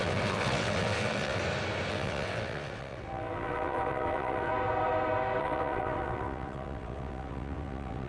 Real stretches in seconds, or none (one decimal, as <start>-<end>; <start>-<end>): 1.4-1.9; 4.5-5.4